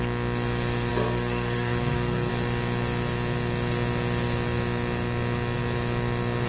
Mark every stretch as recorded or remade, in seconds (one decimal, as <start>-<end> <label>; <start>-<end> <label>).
0.0-0.9 recorded; 0.9-2.3 remade; 2.3-6.5 recorded